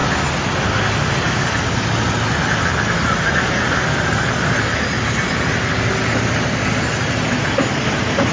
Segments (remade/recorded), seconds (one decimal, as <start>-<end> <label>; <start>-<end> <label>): 0.0-8.3 recorded

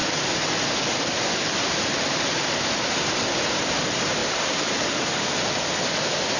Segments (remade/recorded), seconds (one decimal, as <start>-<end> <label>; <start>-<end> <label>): 0.0-4.2 recorded; 4.2-5.3 remade; 5.3-6.4 recorded

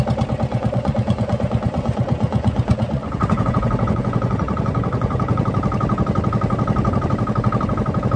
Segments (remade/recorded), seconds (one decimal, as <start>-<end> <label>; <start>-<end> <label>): 0.0-0.5 recorded; 0.5-5.4 remade; 5.4-8.2 recorded